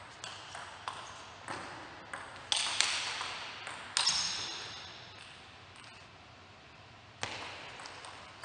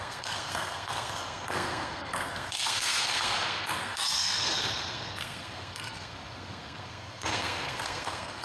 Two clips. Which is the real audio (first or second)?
first